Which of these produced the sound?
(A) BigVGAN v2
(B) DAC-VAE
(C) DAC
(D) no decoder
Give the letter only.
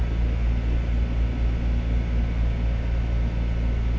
D